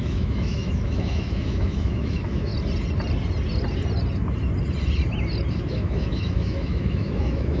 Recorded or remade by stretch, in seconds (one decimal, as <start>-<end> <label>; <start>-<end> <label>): 0.0-2.5 remade; 2.5-5.5 recorded; 5.5-7.6 remade